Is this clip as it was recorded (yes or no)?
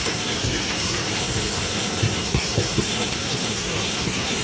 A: no